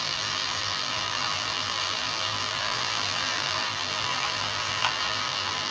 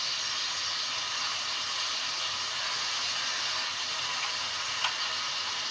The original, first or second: second